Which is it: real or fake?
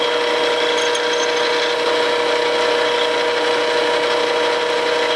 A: real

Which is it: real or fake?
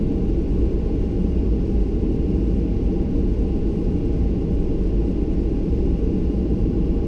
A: real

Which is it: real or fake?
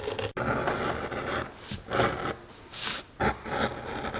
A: real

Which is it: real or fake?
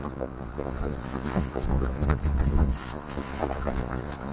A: fake